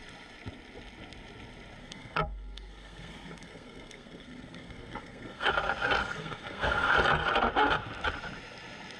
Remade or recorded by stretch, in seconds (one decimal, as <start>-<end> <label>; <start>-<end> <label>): 0.0-1.8 recorded; 1.8-5.5 remade; 5.5-6.0 recorded; 6.0-6.9 remade; 6.9-9.0 recorded